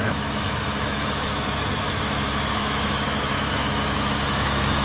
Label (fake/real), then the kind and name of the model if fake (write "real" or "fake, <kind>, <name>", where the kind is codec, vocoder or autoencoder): fake, autoencoder, DAC-VAE